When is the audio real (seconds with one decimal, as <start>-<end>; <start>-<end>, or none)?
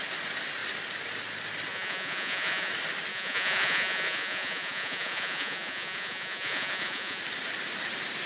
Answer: 0.0-1.7; 2.7-3.1; 7.2-8.3